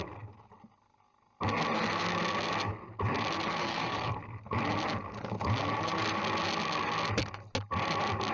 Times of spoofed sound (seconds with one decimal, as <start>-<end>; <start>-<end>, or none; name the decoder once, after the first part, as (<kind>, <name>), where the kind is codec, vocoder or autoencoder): 3.6-4.1 (codec, SNAC)